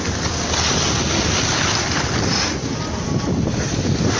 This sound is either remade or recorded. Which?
recorded